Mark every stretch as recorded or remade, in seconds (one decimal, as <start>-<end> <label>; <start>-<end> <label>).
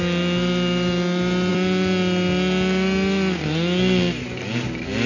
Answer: 0.0-5.1 recorded